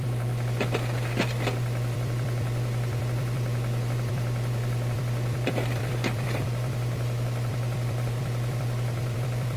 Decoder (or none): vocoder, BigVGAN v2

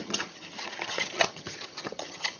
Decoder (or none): vocoder, HiFi-GAN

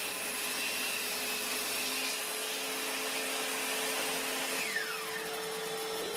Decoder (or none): none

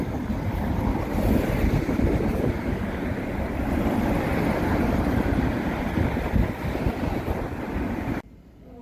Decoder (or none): none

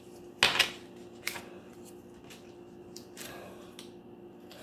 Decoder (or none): none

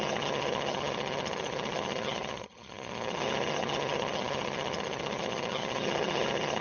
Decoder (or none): vocoder, HiFi-GAN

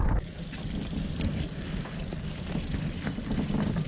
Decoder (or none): none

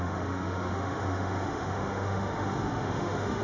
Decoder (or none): autoencoder, DAC-VAE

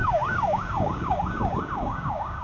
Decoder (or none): codec, DAC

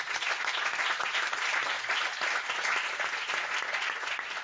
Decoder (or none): none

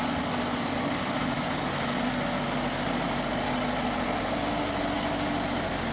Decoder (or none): none